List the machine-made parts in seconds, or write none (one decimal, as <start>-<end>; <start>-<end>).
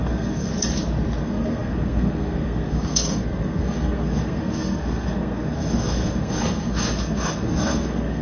0.0-0.5; 1.2-8.2